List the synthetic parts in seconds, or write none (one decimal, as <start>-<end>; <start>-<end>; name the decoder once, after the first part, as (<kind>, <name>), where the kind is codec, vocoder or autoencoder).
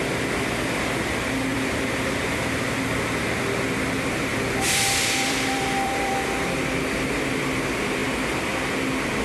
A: 1.5-3.5 (vocoder, BigVGAN v2); 4.3-6.3